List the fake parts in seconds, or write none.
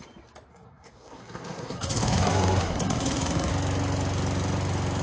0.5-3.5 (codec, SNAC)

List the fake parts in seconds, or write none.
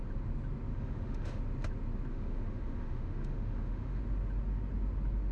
0.7-1.4 (autoencoder, DAC-VAE); 2.1-4.0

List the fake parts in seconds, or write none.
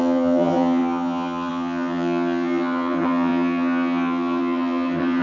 0.0-5.2 (vocoder, HiFi-GAN)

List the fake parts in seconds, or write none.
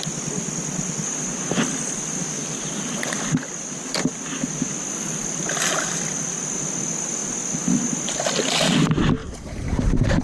9.2-10.2 (vocoder, BigVGAN v2)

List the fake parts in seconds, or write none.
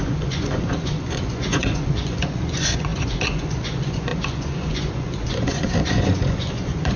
0.0-7.0 (vocoder, Vocos)